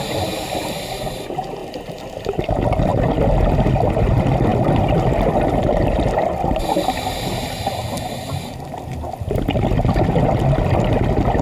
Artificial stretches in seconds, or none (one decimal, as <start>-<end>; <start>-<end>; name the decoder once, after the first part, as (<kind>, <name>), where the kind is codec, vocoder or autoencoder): none